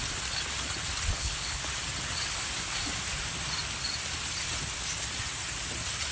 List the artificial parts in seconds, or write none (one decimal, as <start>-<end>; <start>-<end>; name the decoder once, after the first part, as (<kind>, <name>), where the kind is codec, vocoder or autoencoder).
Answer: 1.1-1.6 (codec, HILCodec)